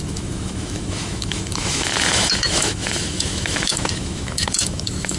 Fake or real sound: fake